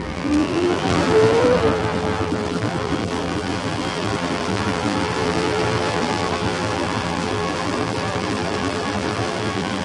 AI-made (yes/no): yes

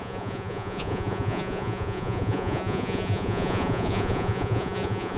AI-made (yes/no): yes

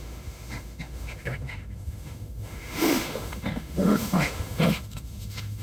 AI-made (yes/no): yes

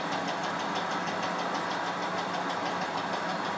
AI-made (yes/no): no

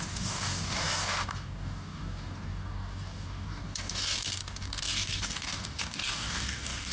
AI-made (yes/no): yes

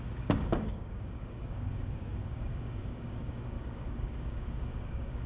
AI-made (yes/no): yes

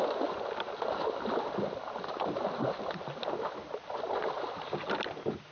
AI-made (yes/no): no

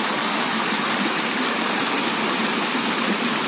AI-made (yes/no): no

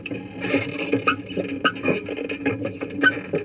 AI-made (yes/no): no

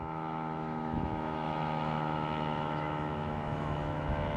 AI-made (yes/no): yes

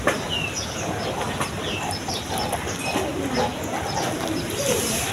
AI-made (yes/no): no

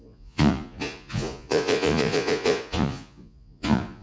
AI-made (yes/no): yes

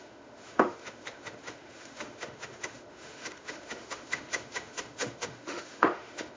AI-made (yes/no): yes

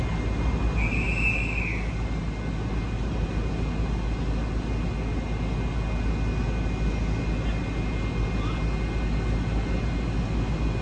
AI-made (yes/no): no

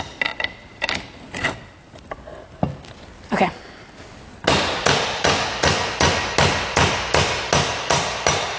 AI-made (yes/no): no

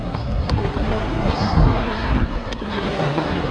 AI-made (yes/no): yes